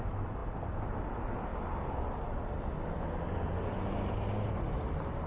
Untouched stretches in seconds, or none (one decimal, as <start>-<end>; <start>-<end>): 0.0-5.3

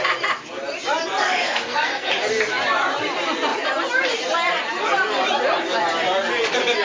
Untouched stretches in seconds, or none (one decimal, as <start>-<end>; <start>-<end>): 0.0-1.2; 2.1-6.8

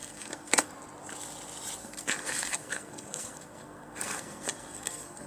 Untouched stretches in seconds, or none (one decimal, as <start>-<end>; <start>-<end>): 0.7-1.8

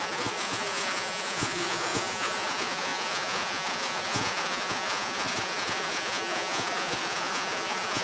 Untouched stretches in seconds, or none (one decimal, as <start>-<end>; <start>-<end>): none

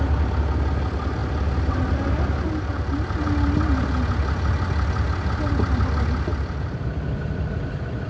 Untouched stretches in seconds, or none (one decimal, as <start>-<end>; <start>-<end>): 0.0-8.1

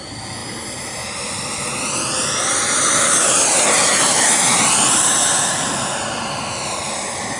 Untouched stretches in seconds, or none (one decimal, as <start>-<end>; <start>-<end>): 0.0-7.4

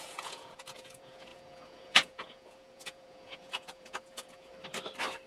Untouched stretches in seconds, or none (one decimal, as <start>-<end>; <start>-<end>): 4.5-5.3